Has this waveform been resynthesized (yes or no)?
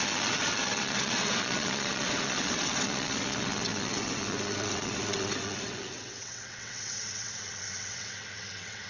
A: yes